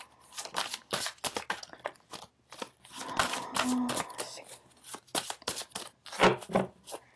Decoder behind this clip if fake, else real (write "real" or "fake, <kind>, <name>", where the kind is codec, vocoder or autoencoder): real